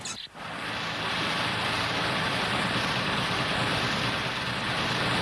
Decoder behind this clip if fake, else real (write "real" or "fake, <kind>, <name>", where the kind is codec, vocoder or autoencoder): real